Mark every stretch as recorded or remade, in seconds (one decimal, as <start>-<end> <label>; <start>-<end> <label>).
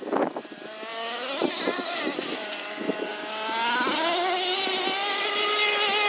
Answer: 0.0-6.1 recorded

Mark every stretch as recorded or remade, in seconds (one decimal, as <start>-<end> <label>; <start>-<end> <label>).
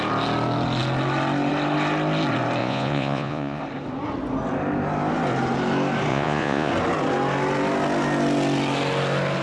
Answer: 0.0-2.6 recorded; 2.6-3.6 remade; 3.6-6.1 recorded; 6.1-6.7 remade; 6.7-9.4 recorded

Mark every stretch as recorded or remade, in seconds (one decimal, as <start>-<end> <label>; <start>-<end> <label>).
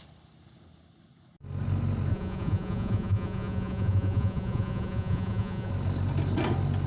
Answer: 0.0-2.1 recorded; 2.1-5.7 remade; 5.7-6.9 recorded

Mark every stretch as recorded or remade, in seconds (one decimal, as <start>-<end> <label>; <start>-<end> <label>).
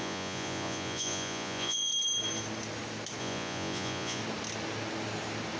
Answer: 0.0-1.9 remade; 1.9-3.2 recorded; 3.2-4.2 remade; 4.2-5.6 recorded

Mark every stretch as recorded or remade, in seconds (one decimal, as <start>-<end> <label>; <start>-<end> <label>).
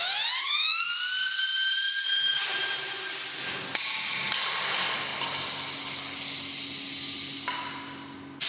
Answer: 0.0-0.4 recorded; 0.4-0.9 remade; 0.9-8.5 recorded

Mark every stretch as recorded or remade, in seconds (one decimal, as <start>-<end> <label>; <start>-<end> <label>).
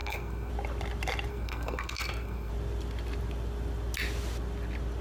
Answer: 0.0-0.5 remade; 0.5-1.3 recorded; 1.3-2.5 remade; 2.5-5.0 recorded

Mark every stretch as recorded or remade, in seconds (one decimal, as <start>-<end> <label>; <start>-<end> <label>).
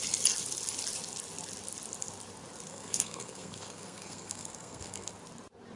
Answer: 0.0-2.7 recorded; 2.7-5.1 remade; 5.1-5.8 recorded